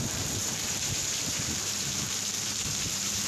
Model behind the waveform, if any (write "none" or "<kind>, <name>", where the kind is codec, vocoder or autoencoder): vocoder, BigVGAN v2